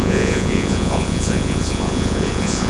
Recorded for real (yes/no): no